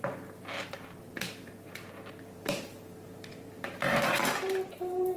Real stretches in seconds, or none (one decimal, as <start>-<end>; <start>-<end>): 0.0-0.6